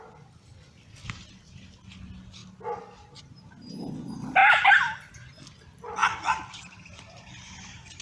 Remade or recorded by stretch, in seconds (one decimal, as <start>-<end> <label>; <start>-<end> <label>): 0.0-8.0 recorded